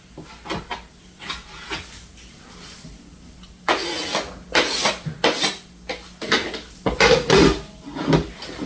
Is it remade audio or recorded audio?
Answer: recorded